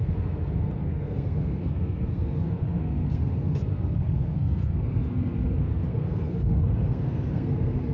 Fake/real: fake